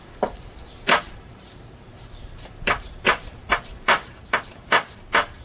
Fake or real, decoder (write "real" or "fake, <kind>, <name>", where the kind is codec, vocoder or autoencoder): fake, vocoder, BigVGAN v2